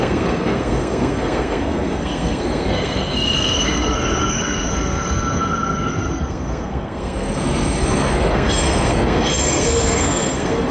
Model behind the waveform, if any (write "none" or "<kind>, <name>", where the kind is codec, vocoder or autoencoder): codec, SNAC